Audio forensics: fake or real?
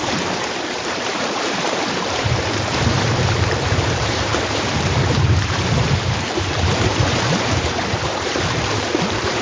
fake